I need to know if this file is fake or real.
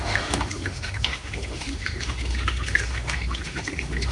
fake